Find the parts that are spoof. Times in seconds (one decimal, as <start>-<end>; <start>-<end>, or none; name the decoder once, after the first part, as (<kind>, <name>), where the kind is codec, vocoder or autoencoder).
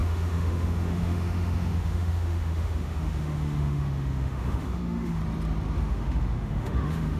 0.0-5.2 (autoencoder, DAC-VAE); 5.8-7.2